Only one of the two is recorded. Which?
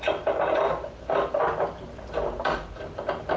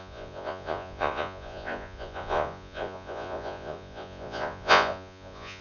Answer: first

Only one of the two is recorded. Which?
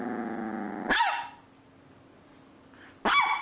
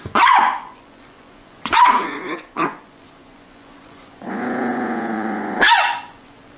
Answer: first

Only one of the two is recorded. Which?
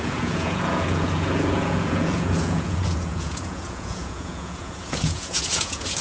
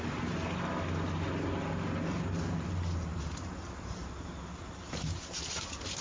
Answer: second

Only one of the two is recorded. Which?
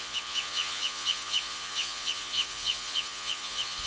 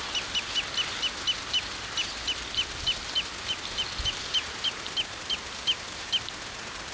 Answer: second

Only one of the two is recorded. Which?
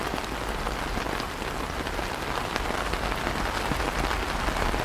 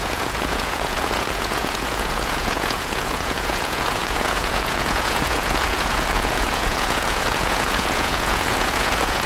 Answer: first